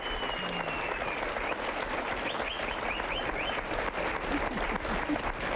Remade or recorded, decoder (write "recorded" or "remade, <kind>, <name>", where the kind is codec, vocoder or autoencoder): recorded